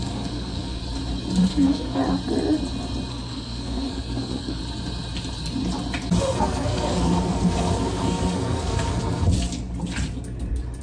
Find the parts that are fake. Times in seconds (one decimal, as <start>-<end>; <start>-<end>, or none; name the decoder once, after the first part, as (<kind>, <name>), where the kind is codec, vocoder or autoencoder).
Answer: 0.0-0.8 (codec, SNAC); 1.5-2.0; 3.1-4.6; 6.2-9.0